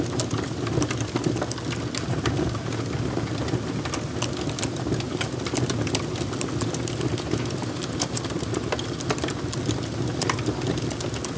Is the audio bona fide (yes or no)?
yes